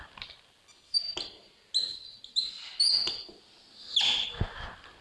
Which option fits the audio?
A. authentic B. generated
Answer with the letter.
A